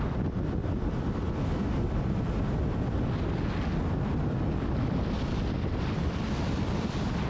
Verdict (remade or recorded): recorded